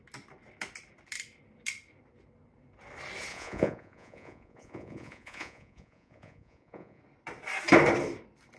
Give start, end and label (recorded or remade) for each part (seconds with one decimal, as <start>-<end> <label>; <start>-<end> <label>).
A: 0.0-3.3 recorded; 3.3-7.0 remade; 7.0-8.6 recorded